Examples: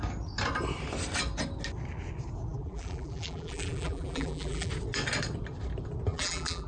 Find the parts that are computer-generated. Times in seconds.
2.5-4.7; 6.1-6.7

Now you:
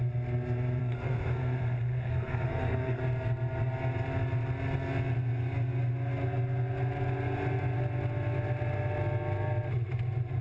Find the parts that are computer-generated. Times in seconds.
0.8-3.0

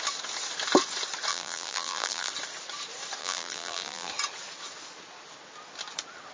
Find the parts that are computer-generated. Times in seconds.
1.3-2.3; 3.2-4.1

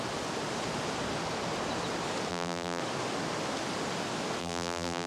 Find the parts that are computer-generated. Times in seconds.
2.3-2.8; 4.4-5.1

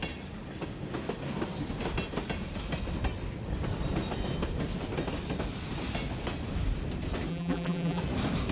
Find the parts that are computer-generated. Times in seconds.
7.3-8.0

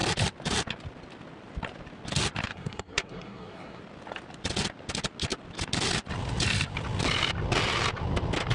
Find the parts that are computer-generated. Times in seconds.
2.5-3.8